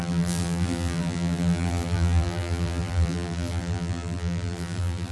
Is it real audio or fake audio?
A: fake